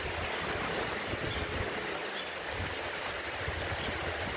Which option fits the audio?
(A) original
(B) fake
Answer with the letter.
A